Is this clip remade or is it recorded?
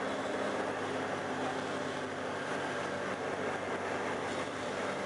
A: recorded